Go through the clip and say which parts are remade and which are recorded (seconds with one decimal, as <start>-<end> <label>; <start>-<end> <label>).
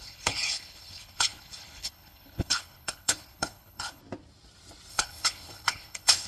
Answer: 0.0-4.0 remade; 4.0-4.9 recorded; 4.9-6.3 remade